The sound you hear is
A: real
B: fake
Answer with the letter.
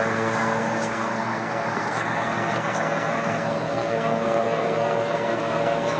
B